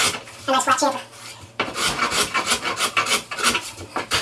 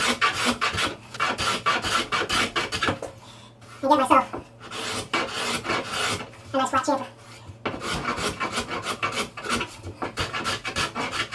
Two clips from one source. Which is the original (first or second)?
second